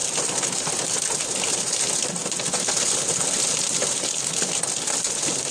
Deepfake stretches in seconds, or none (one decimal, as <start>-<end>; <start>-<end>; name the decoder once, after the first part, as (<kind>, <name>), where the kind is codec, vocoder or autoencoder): none